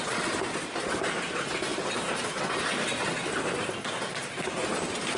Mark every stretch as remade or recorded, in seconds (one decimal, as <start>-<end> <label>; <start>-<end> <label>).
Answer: 0.0-5.2 recorded